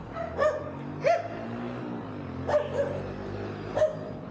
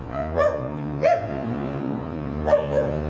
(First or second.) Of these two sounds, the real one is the first